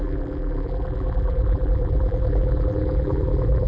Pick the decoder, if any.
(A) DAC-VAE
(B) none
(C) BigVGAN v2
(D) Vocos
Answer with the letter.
C